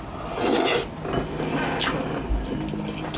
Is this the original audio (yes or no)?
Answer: yes